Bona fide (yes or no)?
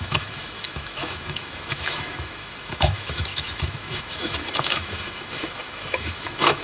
no